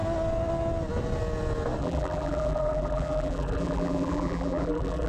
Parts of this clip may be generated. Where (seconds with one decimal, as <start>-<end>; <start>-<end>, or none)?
1.8-5.1